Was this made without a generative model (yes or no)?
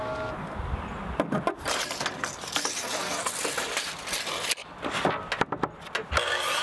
yes